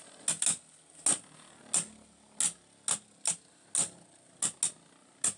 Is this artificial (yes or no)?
no